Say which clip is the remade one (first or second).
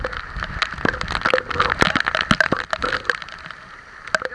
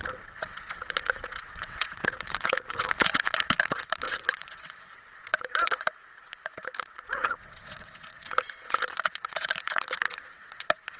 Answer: second